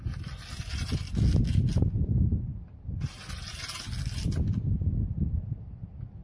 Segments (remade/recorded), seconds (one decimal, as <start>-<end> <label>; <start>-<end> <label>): 0.0-6.2 recorded